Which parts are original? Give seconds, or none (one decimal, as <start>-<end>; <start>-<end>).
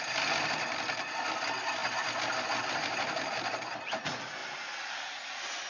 0.0-5.7